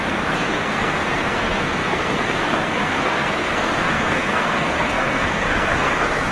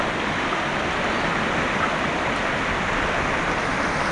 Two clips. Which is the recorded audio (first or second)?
second